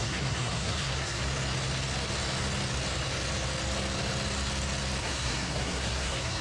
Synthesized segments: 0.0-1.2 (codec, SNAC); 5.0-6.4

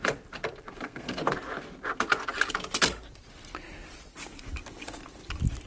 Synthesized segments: 0.7-1.2 (codec, SNAC)